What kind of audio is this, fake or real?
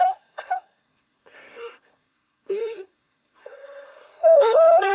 fake